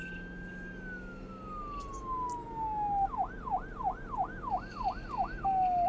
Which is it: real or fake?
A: real